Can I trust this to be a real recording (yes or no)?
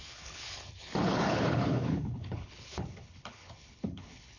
no